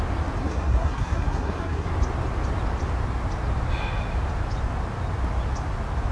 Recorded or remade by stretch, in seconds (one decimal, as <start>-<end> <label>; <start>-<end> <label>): 0.0-0.4 recorded; 0.4-1.9 remade; 1.9-6.1 recorded